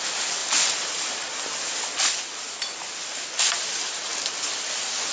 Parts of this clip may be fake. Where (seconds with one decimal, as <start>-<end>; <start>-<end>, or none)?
none